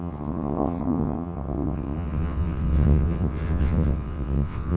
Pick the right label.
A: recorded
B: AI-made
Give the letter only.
B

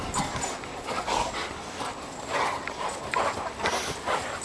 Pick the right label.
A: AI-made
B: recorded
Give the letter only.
B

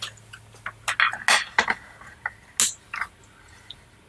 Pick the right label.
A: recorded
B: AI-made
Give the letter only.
A